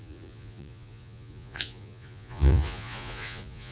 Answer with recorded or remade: remade